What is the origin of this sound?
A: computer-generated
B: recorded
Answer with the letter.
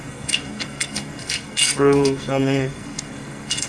A